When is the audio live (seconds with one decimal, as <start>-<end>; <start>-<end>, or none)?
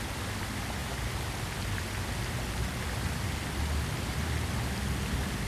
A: 0.0-5.5